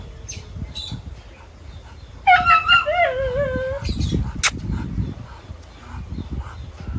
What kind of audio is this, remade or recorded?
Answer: recorded